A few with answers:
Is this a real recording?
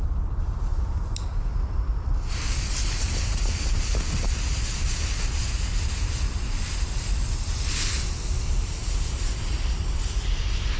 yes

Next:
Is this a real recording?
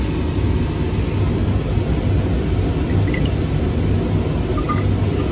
yes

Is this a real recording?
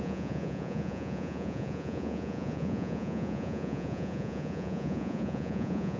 no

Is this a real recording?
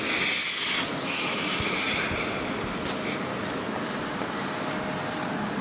yes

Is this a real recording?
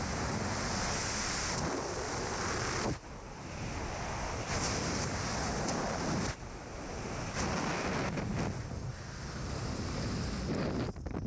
yes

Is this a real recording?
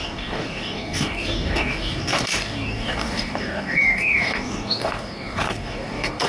no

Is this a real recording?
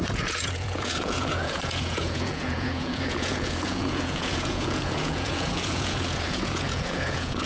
no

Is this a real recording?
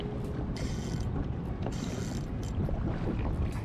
yes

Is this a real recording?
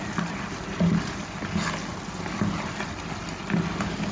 yes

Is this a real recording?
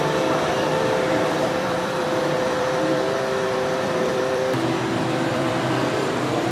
no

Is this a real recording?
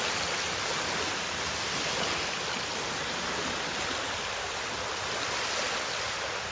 yes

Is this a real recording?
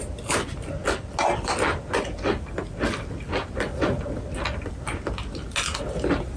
yes